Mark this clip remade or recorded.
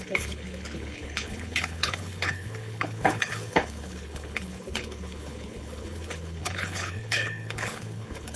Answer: remade